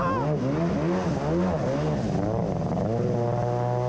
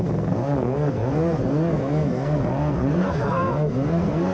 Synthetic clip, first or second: second